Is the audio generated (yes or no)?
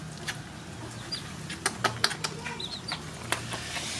no